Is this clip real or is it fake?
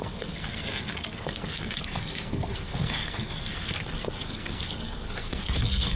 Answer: fake